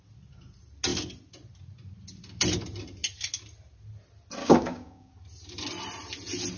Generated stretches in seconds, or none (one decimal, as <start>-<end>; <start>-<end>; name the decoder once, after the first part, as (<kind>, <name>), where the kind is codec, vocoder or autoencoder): 4.4-5.1 (codec, DAC)